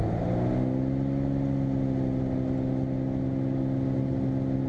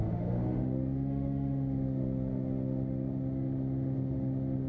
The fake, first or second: second